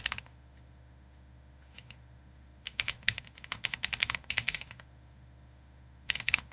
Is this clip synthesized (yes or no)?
yes